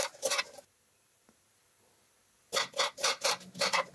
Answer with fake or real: real